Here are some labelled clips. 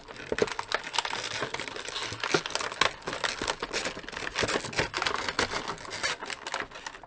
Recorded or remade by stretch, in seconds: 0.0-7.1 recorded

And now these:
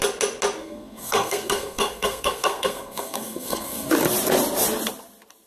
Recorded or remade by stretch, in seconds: 0.0-0.6 recorded; 0.6-3.9 remade; 3.9-5.5 recorded

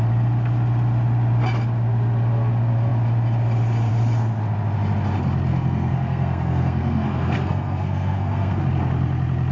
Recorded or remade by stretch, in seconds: 0.0-5.5 recorded; 5.5-8.6 remade; 8.6-9.5 recorded

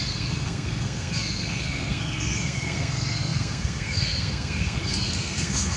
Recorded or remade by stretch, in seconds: 0.0-5.8 remade

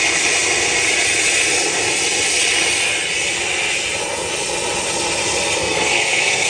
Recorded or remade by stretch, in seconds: 0.0-5.6 recorded; 5.6-6.5 remade